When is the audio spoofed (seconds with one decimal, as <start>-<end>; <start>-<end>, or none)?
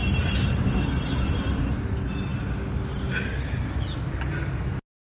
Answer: 0.0-1.6